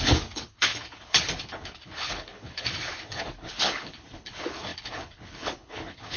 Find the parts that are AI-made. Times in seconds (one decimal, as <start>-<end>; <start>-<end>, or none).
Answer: 0.0-6.2